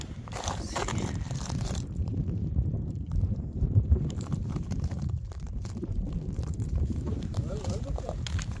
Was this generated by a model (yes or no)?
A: yes